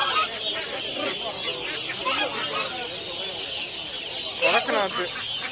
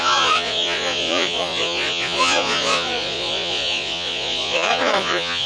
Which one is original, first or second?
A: first